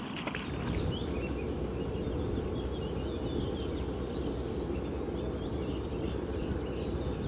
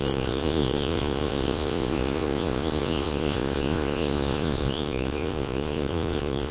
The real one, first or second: first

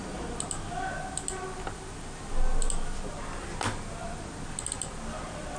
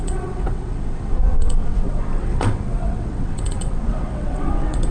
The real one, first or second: first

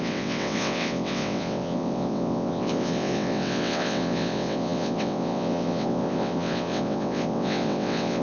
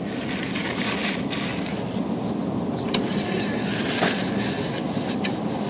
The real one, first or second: second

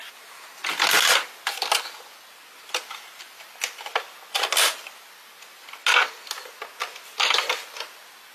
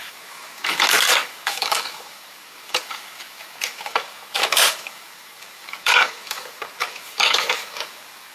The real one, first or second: first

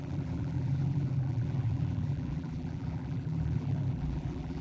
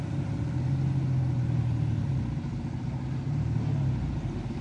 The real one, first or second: second